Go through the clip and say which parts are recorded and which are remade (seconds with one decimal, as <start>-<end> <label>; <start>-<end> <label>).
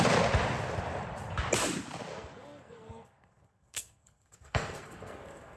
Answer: 0.0-2.1 recorded; 2.1-5.6 remade